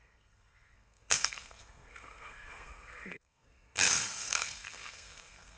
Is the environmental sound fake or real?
fake